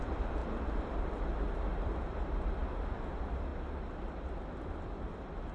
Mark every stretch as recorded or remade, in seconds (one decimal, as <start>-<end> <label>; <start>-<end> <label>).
0.0-2.6 remade; 2.6-3.1 recorded; 3.1-3.5 remade; 3.5-4.6 recorded; 4.6-5.5 remade